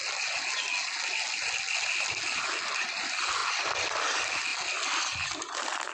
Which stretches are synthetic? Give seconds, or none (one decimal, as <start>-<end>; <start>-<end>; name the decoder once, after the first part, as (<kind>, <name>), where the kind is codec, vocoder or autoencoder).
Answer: none